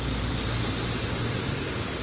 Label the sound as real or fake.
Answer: real